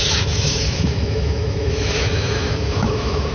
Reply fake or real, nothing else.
fake